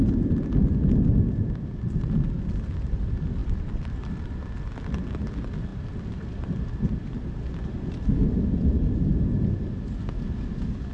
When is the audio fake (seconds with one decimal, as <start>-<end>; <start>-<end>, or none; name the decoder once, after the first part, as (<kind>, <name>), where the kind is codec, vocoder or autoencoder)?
3.4-4.4 (vocoder, BigVGAN v2); 5.7-7.5